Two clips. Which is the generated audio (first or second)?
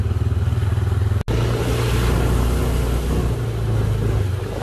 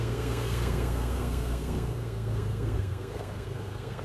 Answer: second